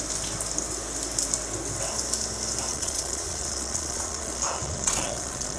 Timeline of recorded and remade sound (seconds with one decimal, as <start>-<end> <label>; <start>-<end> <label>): 0.0-2.7 recorded; 2.7-5.6 remade